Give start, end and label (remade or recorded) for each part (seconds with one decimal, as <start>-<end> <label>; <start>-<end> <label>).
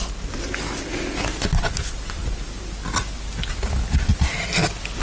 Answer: 0.0-4.1 recorded; 4.1-4.6 remade; 4.6-5.0 recorded